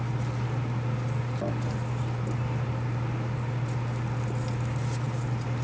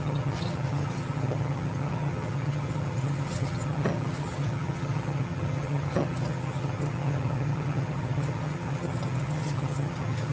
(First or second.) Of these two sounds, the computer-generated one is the second